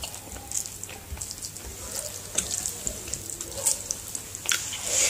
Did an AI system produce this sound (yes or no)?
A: no